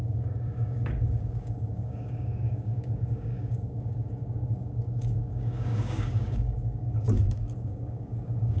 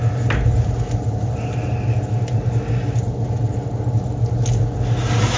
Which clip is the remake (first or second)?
first